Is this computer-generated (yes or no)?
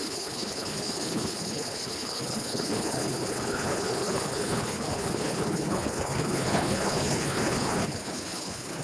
yes